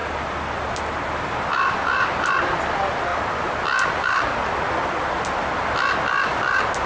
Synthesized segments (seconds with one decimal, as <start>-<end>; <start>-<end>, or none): none